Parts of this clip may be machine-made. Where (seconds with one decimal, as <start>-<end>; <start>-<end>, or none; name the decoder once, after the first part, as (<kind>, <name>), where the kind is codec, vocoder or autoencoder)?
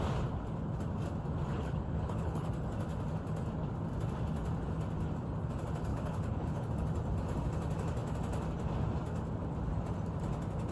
1.5-2.5 (codec, HILCodec); 5.9-6.7